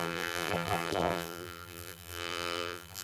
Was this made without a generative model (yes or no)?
no